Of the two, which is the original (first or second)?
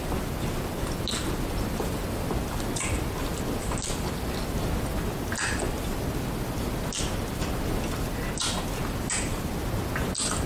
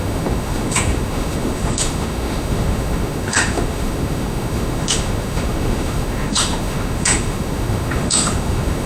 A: first